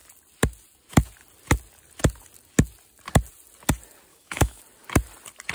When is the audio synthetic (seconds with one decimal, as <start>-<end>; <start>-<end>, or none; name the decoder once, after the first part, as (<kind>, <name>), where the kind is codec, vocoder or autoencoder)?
4.1-4.6 (autoencoder, DAC-VAE)